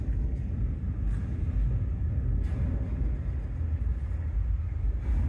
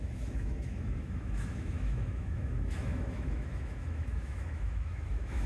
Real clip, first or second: first